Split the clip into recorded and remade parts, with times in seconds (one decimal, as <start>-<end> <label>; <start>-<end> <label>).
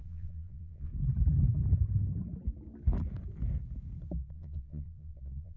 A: 0.0-0.9 remade; 0.9-4.3 recorded; 4.3-5.6 remade